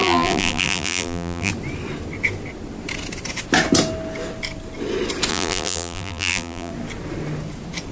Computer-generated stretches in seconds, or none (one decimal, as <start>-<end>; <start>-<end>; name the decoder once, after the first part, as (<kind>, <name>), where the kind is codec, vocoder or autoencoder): 0.0-1.5 (vocoder, BigVGAN v2); 5.3-6.7